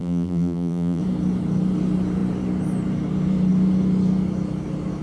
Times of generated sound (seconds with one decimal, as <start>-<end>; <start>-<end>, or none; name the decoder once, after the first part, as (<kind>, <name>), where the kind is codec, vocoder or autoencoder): 0.0-1.0 (vocoder, BigVGAN v2)